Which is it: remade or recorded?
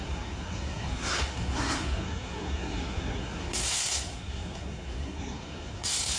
remade